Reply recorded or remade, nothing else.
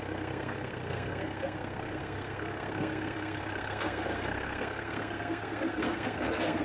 remade